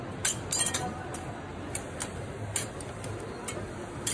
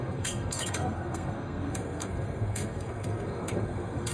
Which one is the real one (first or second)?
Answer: first